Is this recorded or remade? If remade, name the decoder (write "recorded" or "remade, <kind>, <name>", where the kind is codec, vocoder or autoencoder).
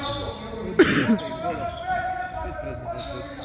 recorded